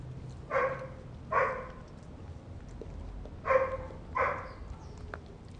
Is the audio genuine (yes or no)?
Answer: yes